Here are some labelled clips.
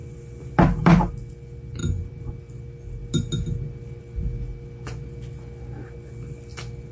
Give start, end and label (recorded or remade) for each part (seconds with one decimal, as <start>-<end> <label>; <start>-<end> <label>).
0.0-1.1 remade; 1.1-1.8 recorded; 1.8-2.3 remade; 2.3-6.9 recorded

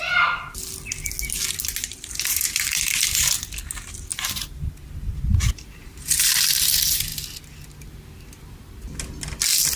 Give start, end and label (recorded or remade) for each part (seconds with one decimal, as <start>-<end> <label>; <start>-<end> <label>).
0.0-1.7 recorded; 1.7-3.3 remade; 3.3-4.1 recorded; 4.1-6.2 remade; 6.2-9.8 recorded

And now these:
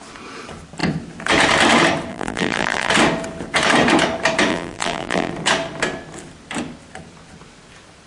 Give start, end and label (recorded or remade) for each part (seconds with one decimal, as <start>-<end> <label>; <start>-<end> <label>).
0.0-2.1 recorded; 2.1-2.9 remade; 2.9-4.5 recorded; 4.5-5.3 remade; 5.3-8.1 recorded